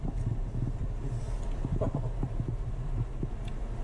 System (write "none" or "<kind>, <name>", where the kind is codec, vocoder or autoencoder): none